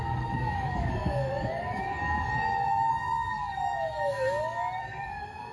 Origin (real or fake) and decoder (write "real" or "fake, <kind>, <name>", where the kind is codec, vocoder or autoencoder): fake, codec, DAC